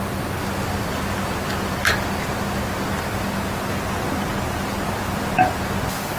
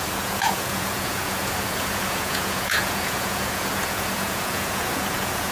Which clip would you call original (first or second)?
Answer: first